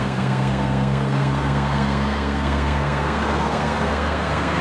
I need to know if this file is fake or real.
fake